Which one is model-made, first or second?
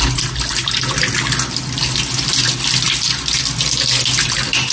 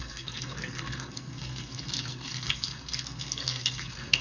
second